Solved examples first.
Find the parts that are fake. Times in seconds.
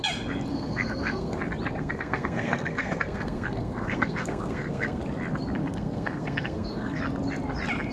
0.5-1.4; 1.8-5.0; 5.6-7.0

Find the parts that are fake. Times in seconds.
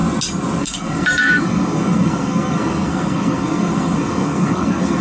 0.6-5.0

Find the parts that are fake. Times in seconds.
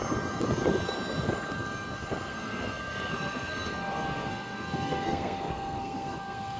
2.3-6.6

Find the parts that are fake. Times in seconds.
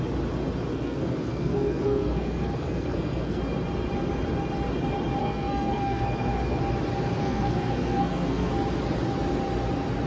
0.7-3.4; 5.2-6.6; 7.2-8.5